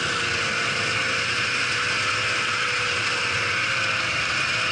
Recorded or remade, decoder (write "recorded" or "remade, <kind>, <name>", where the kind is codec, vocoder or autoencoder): recorded